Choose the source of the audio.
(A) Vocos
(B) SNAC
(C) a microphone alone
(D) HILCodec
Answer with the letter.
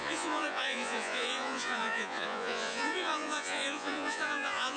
A